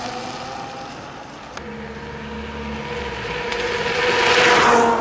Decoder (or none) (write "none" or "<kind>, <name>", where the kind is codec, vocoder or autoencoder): none